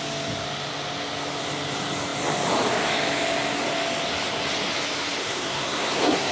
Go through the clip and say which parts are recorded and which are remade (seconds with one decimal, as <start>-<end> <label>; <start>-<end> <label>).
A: 0.0-5.2 recorded; 5.2-6.3 remade

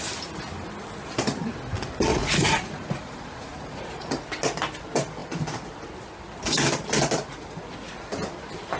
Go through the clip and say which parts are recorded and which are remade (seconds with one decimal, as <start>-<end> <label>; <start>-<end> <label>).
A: 0.0-2.1 recorded; 2.1-4.1 remade; 4.1-8.8 recorded

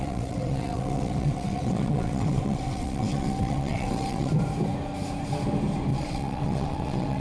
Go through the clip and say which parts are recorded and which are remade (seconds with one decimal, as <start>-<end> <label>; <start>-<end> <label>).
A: 0.0-4.3 remade; 4.3-5.9 recorded; 5.9-7.2 remade